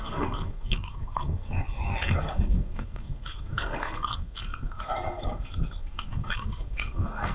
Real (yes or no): no